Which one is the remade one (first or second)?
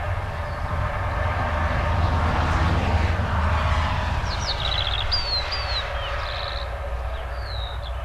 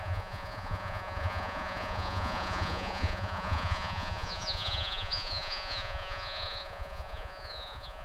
second